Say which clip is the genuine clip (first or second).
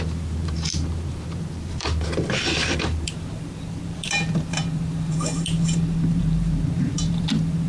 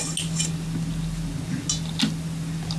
second